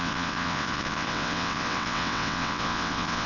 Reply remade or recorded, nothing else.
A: remade